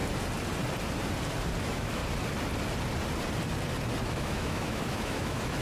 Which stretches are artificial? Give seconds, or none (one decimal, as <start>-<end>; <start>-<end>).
1.6-2.0; 4.1-5.6